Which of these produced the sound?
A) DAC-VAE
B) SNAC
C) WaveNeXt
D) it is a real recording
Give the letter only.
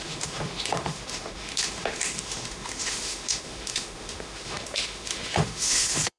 A